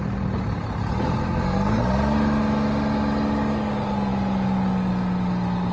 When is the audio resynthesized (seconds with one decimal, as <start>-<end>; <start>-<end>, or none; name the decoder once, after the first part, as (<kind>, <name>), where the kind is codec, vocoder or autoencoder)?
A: 1.2-1.8 (codec, SNAC)